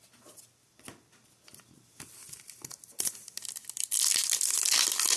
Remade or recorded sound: recorded